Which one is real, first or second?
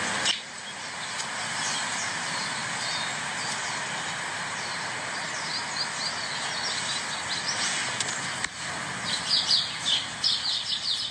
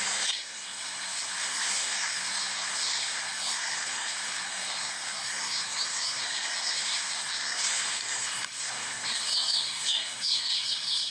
first